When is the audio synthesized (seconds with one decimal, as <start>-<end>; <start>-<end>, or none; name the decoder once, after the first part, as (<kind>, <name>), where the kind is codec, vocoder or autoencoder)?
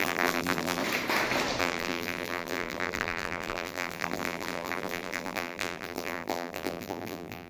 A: 0.0-0.8 (vocoder, BigVGAN v2); 1.6-7.5